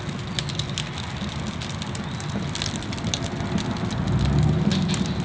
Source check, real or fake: real